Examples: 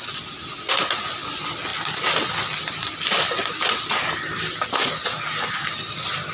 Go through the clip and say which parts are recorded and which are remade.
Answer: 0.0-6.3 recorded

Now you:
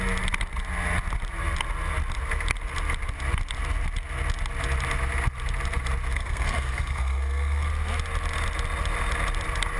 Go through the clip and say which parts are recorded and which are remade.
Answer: 0.0-6.1 recorded; 6.1-7.7 remade; 7.7-9.8 recorded

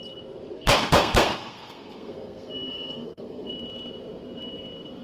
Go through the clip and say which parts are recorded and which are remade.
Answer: 0.0-0.5 recorded; 0.5-3.5 remade; 3.5-5.0 recorded

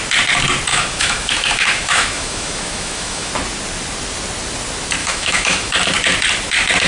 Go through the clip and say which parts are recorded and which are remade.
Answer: 0.0-0.7 recorded; 0.7-3.3 remade; 3.3-5.0 recorded; 5.0-5.7 remade; 5.7-6.9 recorded